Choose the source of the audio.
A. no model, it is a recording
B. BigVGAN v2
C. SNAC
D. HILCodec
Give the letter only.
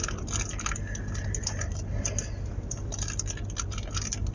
A